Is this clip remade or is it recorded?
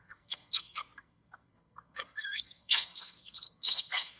remade